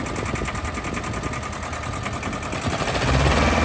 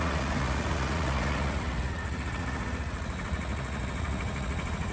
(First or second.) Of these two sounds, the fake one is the second